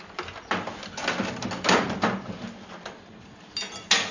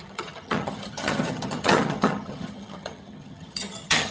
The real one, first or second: first